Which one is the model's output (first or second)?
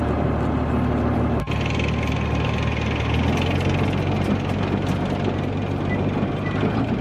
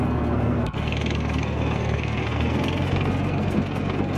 second